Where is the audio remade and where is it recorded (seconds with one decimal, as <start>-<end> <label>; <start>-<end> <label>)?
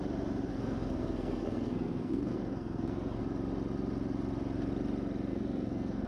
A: 0.0-0.5 recorded; 0.5-3.2 remade; 3.2-5.3 recorded; 5.3-6.1 remade